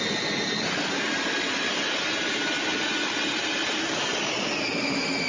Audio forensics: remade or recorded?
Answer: recorded